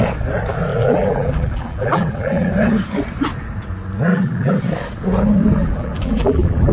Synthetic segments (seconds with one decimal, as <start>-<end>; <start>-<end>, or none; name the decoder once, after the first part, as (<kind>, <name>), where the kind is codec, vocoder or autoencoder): 0.7-2.5 (vocoder, BigVGAN v2); 4.1-4.6; 5.6-6.7